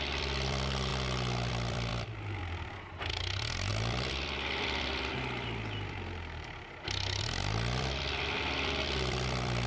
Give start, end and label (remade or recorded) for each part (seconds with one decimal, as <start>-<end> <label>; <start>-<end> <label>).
0.0-0.9 remade; 0.9-1.5 recorded; 1.5-9.7 remade